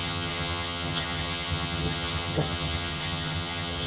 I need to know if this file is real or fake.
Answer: fake